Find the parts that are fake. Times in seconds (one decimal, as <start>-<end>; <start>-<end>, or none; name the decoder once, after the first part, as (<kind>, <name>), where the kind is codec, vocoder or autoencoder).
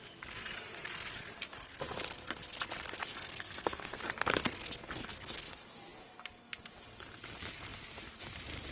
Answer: 3.1-4.0 (codec, SNAC)